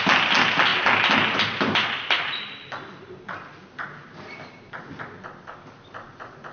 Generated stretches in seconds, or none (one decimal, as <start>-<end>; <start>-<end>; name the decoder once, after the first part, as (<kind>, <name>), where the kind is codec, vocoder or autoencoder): none